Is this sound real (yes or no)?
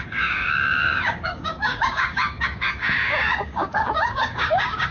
no